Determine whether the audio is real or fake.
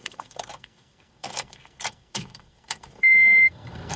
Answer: fake